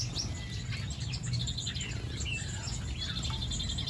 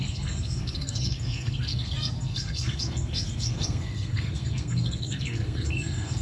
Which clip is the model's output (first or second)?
second